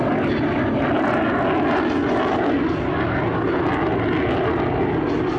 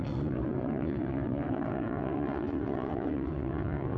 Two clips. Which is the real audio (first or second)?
first